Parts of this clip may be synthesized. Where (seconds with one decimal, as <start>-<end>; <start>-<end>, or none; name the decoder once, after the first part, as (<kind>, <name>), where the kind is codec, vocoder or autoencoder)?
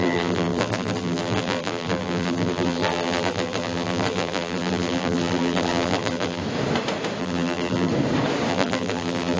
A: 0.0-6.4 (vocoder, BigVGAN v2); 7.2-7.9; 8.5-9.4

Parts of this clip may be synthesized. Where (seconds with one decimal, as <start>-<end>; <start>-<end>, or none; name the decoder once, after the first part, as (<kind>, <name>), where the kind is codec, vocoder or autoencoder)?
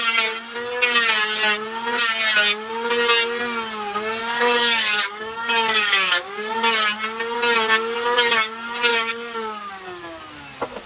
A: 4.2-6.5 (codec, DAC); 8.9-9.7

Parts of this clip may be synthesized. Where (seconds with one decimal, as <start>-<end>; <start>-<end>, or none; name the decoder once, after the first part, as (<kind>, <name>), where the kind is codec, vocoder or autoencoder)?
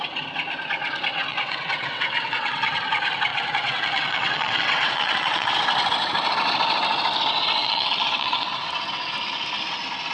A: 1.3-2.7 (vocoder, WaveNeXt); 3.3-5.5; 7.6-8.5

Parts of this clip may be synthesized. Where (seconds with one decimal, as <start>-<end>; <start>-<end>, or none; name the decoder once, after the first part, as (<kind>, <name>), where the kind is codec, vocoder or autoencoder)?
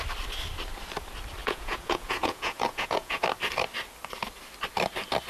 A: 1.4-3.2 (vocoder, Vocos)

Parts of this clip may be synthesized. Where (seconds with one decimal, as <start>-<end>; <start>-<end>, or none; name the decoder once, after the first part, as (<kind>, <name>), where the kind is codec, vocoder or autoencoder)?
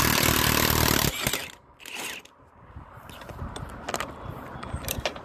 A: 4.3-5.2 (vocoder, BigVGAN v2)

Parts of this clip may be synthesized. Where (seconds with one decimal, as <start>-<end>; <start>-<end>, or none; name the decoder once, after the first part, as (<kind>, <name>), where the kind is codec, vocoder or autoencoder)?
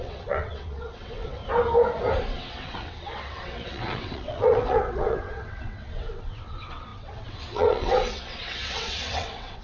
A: 0.0-1.4 (vocoder, WaveNeXt); 2.4-9.6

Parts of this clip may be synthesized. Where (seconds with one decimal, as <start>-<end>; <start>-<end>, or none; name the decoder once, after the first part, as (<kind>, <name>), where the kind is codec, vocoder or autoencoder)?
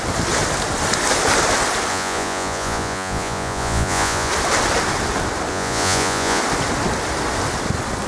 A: 1.9-4.3 (vocoder, Vocos); 5.5-6.4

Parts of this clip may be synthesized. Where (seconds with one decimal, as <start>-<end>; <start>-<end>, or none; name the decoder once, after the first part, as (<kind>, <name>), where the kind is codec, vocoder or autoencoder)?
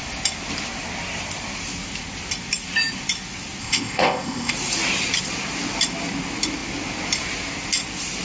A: 3.6-4.5 (codec, ZipCodec)